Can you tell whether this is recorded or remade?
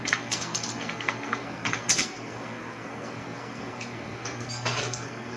remade